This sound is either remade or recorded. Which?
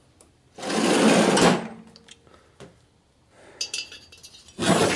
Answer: recorded